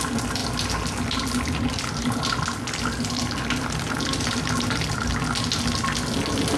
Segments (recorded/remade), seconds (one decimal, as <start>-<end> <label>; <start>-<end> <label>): 0.0-6.6 recorded